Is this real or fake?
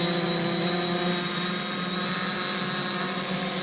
real